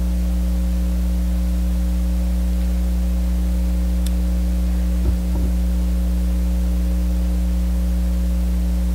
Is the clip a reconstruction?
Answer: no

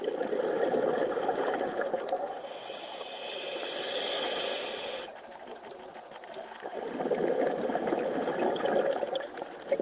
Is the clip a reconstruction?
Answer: no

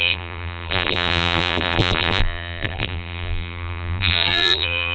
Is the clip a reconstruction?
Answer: yes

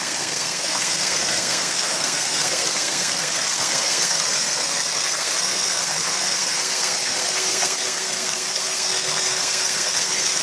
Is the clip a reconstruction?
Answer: yes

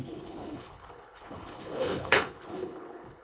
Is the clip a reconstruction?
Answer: yes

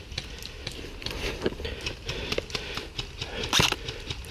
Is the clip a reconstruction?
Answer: no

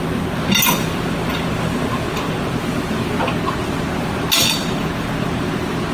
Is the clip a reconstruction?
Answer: no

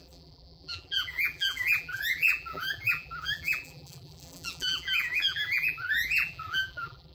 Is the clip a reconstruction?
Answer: yes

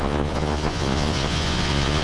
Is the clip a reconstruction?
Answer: yes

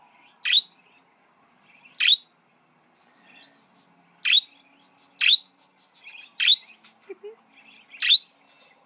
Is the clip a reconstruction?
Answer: no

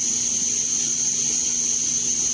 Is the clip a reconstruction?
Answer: no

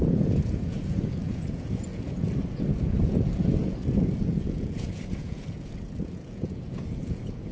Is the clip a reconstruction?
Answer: yes